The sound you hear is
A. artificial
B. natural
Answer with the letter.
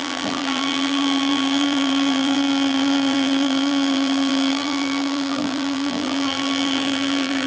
A